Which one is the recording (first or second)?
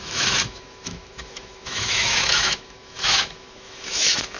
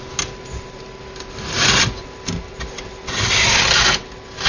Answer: second